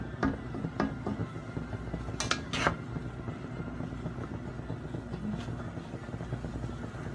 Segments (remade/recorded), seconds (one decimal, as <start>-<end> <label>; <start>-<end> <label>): 0.0-7.1 recorded